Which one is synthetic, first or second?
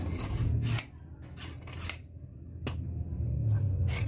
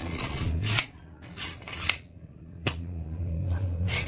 second